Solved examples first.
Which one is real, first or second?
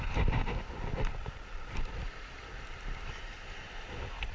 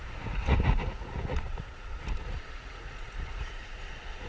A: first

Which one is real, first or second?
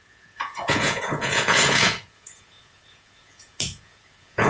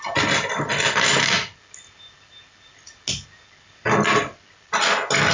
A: second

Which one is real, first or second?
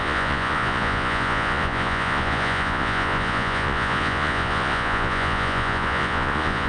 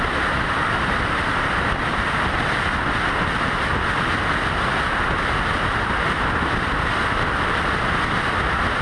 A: second